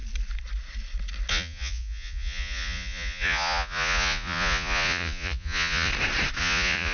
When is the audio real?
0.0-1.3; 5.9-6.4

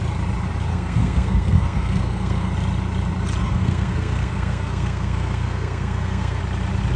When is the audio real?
0.0-0.7; 2.5-3.4; 6.4-7.0

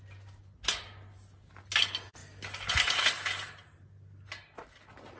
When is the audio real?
0.0-5.2

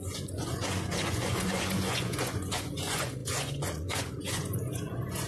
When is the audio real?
none

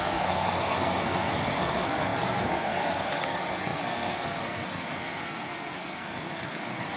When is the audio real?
none